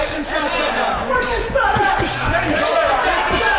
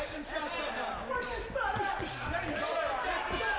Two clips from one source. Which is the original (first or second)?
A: second